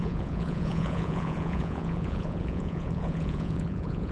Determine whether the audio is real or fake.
fake